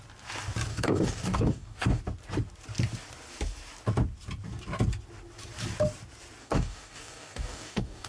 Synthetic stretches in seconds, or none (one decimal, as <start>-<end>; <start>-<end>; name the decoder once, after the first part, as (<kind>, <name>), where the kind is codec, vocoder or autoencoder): 0.7-2.0 (codec, DAC); 6.4-8.1